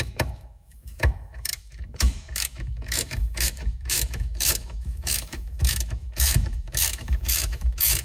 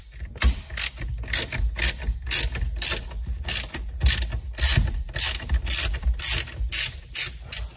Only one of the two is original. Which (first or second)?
second